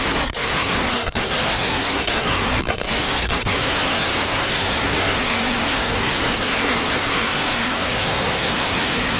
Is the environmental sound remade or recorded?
remade